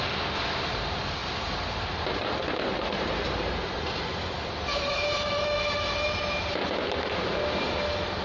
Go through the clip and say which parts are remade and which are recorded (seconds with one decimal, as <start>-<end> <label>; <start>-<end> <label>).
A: 0.0-4.7 recorded; 4.7-5.6 remade; 5.6-8.2 recorded